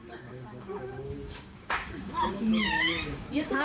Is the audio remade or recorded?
remade